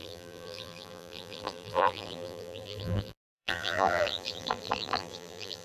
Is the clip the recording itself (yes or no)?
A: no